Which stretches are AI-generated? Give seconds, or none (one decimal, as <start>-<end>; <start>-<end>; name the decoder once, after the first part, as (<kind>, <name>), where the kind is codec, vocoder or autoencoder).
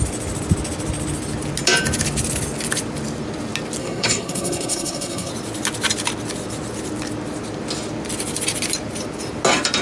3.8-5.3 (codec, SNAC)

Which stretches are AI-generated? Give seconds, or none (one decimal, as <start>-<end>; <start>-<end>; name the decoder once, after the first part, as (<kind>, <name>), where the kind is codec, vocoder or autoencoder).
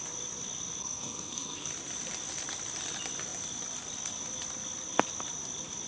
0.8-1.7 (codec, SNAC)